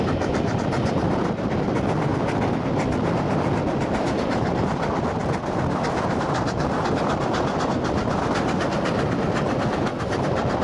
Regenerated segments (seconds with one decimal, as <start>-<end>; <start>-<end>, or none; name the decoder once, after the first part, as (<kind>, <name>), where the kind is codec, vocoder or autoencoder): none